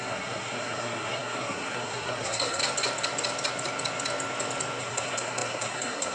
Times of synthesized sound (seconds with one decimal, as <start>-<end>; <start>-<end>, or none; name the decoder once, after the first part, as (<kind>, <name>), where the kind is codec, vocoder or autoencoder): 0.0-2.6 (codec, SNAC); 4.8-6.1